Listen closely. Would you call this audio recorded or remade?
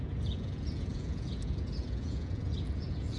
remade